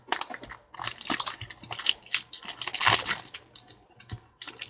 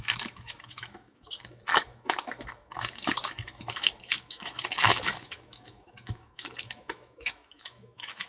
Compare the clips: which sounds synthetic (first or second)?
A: second